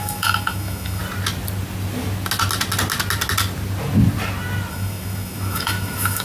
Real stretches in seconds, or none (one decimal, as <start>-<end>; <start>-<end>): 1.0-4.7